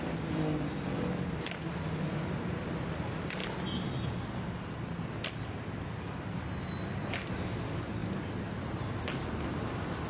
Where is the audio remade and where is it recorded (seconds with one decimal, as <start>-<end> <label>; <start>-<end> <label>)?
0.0-10.1 recorded